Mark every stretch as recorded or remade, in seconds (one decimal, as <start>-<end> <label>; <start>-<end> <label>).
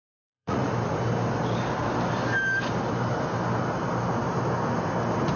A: 0.0-0.7 remade; 0.7-5.4 recorded